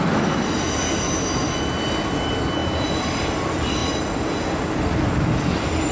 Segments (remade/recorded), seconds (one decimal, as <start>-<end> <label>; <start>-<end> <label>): 0.0-5.9 recorded